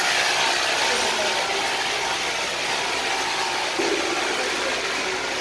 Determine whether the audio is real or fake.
real